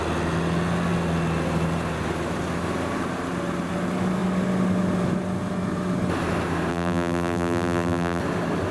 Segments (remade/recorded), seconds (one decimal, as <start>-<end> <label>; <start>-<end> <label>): 0.0-6.7 recorded; 6.7-8.2 remade; 8.2-8.7 recorded